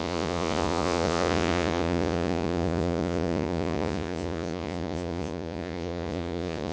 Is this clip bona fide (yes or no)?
no